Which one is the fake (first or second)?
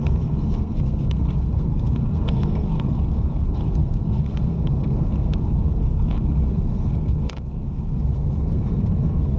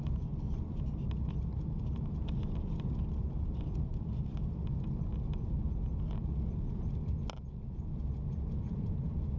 first